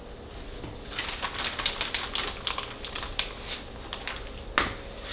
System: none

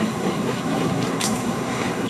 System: codec, SNAC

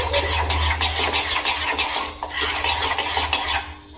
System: none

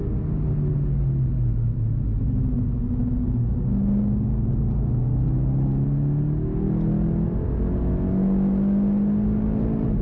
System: none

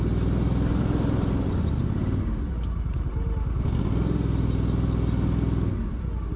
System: none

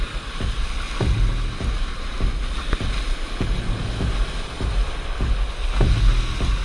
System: none